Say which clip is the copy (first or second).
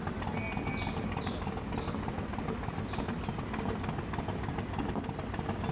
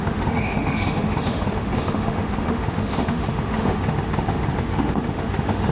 second